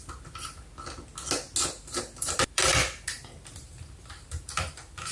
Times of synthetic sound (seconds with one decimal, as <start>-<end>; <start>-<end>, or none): 1.8-2.7; 3.6-5.1

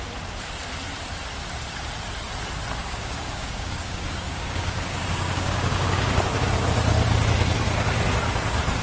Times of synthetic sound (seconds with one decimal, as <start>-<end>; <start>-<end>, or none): 2.8-6.1